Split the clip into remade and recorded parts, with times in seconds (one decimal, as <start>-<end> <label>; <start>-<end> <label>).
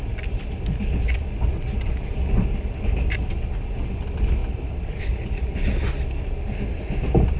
0.0-7.4 recorded